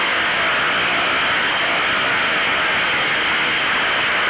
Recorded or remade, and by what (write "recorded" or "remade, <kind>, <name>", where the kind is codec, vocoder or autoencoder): recorded